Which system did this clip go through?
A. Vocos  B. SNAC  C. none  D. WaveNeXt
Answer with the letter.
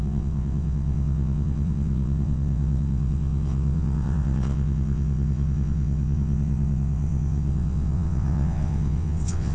D